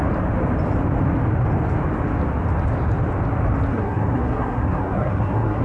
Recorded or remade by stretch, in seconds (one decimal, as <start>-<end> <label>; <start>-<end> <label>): 0.0-3.7 recorded; 3.7-5.6 remade